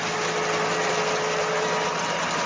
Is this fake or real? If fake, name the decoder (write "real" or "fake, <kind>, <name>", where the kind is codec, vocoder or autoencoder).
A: real